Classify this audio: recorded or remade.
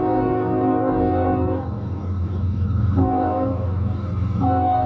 remade